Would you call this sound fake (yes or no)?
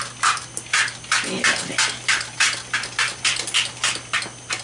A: no